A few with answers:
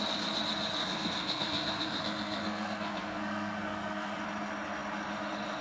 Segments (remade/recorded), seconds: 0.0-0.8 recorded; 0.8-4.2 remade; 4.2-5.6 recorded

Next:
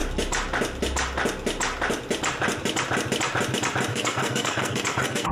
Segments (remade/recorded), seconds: 0.0-3.9 recorded; 3.9-5.3 remade

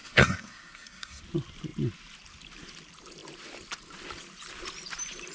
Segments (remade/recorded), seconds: 0.0-1.2 remade; 1.2-5.3 recorded